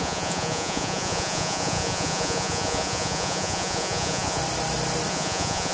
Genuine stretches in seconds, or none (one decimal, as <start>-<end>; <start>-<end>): 4.4-5.1